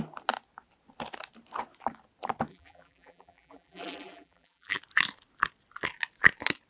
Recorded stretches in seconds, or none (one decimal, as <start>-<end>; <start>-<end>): 0.0-2.5; 4.8-6.7